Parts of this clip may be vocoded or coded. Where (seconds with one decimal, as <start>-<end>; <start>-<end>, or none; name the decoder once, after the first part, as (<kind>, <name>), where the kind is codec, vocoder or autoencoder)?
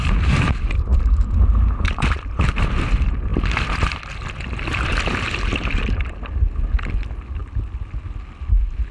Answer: 0.9-2.9 (vocoder, BigVGAN v2); 4.7-5.8